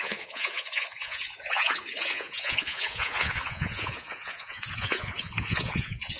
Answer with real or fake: fake